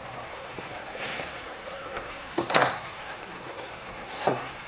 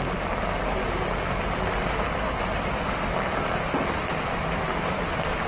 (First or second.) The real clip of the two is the second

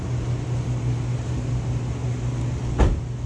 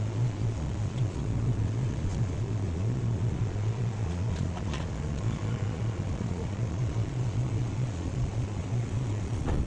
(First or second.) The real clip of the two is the first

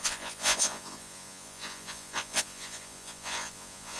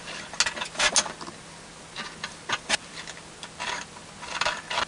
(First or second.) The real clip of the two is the second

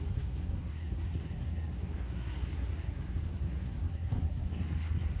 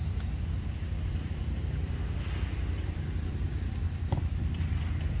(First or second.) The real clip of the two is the second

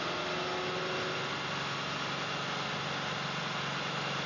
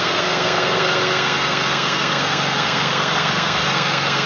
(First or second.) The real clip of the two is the first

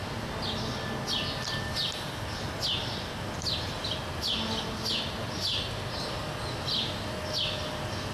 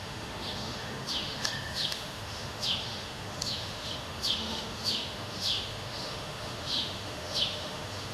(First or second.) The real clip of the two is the first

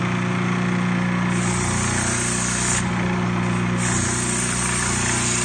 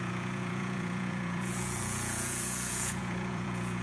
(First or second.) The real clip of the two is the first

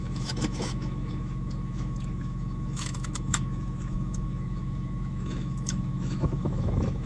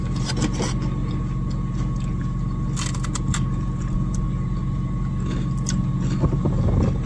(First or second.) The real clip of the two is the second